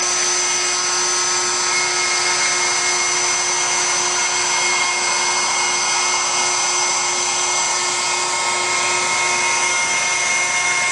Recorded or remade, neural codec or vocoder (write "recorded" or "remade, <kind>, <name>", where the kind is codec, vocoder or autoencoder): recorded